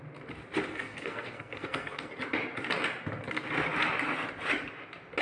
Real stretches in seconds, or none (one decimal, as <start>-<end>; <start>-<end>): 0.0-0.7; 2.1-5.2